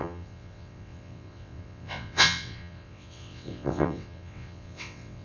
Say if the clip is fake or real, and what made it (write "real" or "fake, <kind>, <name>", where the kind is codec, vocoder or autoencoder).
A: fake, vocoder, WaveNeXt